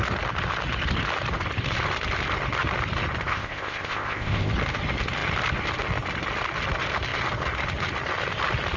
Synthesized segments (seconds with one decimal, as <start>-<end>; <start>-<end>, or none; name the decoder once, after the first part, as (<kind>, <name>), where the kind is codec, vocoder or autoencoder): 3.3-4.5 (codec, ZipCodec)